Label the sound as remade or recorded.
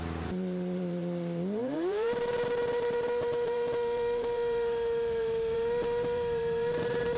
remade